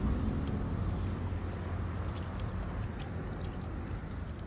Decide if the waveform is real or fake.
real